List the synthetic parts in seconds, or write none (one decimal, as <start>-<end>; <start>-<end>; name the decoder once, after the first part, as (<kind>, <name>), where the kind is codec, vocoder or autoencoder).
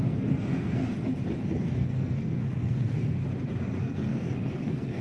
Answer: 0.0-0.8 (codec, SNAC); 1.5-3.2; 3.8-5.0